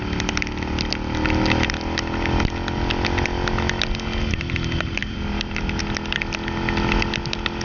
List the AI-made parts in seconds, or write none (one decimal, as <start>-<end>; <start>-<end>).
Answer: 5.0-5.8